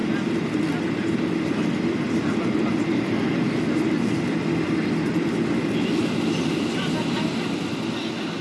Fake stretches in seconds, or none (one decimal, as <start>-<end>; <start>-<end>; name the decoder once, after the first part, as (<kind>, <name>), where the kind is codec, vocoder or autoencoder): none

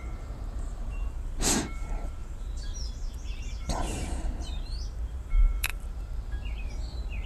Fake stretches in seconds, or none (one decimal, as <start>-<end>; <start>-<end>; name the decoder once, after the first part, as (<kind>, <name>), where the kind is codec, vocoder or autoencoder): 0.0-7.3 (vocoder, BigVGAN v2)

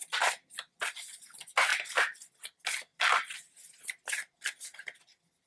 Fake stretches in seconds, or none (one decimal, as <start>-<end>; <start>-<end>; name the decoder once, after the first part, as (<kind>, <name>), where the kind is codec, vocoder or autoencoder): 1.7-2.3 (vocoder, BigVGAN v2)

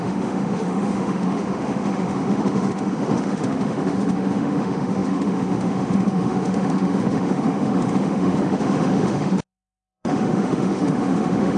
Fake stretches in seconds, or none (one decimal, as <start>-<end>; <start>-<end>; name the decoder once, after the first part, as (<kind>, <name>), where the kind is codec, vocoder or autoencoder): 0.0-11.6 (autoencoder, DAC-VAE)

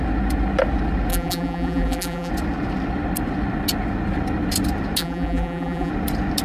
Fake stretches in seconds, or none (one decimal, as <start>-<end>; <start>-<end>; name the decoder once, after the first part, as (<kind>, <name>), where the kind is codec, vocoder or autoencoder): 1.1-2.3 (vocoder, BigVGAN v2); 5.0-5.9

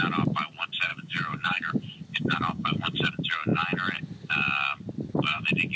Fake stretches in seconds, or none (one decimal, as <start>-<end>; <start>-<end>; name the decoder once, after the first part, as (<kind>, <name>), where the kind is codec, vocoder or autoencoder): 0.9-1.7 (codec, DAC); 2.1-3.1

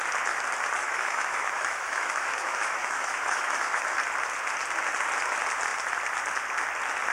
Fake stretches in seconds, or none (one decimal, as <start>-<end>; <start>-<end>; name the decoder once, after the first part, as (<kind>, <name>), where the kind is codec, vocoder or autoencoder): 0.8-3.8 (autoencoder, DAC-VAE)

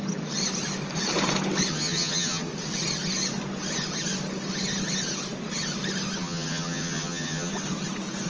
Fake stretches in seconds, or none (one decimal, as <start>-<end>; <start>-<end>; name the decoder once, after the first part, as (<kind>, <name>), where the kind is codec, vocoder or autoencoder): 1.7-2.5 (vocoder, HiFi-GAN); 6.2-7.5